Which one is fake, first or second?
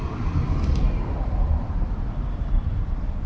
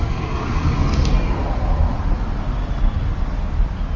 first